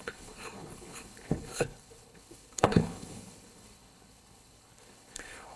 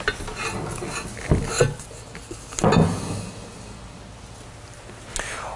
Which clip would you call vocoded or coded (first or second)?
first